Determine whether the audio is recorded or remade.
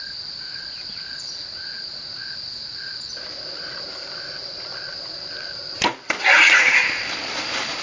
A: remade